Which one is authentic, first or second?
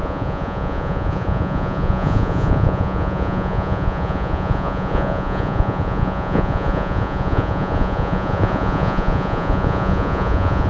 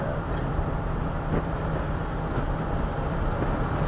second